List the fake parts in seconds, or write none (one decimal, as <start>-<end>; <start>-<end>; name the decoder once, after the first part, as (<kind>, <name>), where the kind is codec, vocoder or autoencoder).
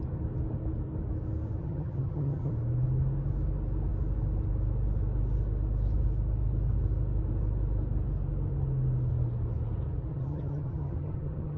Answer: 1.6-2.5 (vocoder, HiFi-GAN); 10.1-11.6